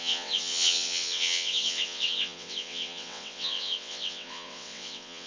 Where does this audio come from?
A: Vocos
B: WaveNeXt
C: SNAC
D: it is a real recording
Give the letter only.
B